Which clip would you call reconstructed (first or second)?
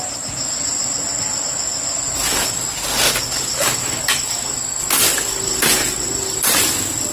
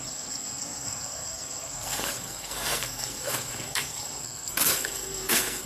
second